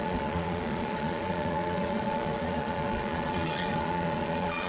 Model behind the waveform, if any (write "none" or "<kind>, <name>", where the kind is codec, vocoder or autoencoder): vocoder, Vocos